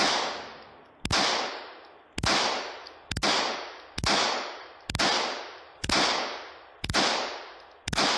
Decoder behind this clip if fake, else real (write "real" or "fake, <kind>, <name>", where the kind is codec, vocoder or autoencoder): real